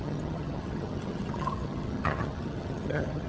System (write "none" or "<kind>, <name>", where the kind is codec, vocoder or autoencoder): vocoder, HiFi-GAN